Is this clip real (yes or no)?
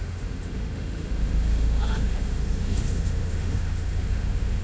no